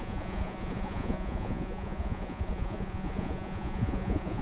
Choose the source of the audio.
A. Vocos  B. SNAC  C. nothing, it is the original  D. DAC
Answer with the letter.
A